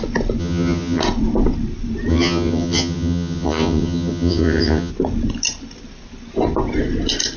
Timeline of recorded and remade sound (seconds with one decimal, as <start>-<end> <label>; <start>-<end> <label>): 0.0-0.4 recorded; 0.4-1.0 remade; 1.0-2.1 recorded; 2.1-4.9 remade; 4.9-7.4 recorded